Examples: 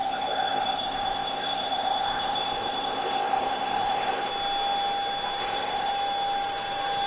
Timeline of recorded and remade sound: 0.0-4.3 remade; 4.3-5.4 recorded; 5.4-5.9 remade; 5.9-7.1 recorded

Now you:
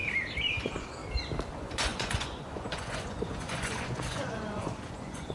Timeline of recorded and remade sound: 0.0-0.5 recorded; 0.5-1.0 remade; 1.0-1.5 recorded; 1.5-5.3 remade